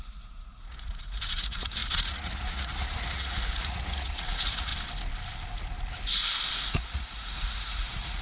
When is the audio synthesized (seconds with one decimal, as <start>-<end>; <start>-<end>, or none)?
0.0-4.7; 6.5-8.2